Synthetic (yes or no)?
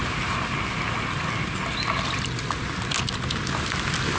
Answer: no